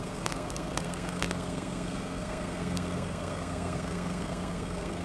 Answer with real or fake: fake